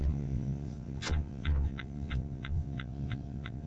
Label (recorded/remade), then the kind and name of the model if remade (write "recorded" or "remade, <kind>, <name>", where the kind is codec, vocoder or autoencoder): remade, vocoder, WaveNeXt